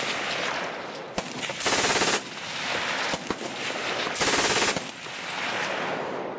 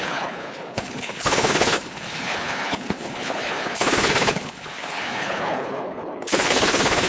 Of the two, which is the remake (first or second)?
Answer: second